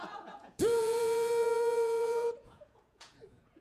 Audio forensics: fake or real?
fake